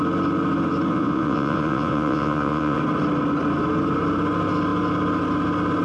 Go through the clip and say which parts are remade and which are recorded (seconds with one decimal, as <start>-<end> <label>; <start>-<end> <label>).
0.0-0.9 recorded; 0.9-2.8 remade; 2.8-5.8 recorded